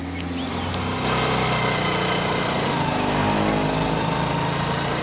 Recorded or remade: recorded